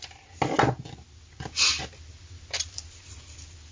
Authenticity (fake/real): real